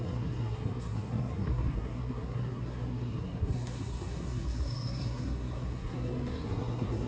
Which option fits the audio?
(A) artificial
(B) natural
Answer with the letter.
A